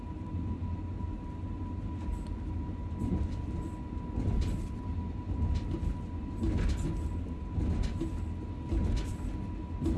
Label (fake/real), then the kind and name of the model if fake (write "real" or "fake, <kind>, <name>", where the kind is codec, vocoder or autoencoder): real